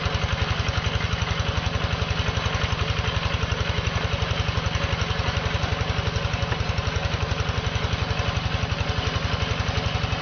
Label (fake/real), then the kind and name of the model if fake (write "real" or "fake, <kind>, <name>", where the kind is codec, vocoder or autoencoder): real